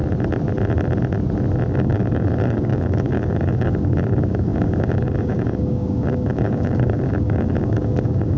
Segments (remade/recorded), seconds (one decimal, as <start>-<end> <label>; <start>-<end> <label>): 0.0-1.7 recorded; 1.7-8.4 remade